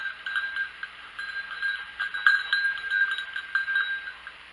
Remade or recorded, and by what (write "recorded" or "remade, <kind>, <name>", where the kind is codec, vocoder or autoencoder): recorded